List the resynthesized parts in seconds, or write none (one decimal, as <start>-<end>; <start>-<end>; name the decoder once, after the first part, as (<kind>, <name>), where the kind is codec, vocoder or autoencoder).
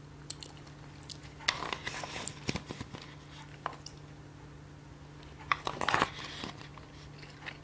none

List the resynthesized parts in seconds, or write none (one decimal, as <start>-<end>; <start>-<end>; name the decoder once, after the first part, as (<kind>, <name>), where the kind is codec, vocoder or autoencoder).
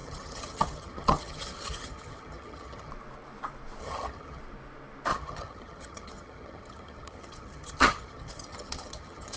0.0-2.9 (vocoder, HiFi-GAN); 3.8-4.4; 5.1-9.4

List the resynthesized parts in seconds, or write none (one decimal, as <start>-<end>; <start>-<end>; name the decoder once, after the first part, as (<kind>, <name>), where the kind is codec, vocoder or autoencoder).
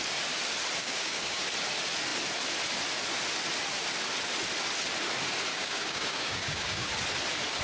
0.8-1.4 (codec, DAC); 5.5-6.9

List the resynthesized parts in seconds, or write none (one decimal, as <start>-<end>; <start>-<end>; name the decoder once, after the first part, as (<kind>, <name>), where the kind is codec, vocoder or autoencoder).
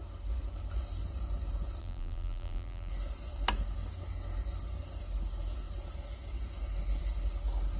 1.8-2.9 (vocoder, BigVGAN v2)